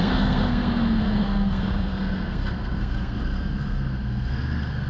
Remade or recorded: remade